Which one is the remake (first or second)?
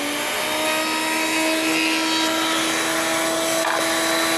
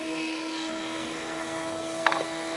second